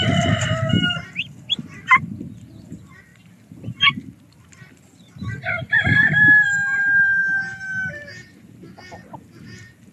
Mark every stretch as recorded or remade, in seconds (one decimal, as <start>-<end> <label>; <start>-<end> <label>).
0.0-9.9 recorded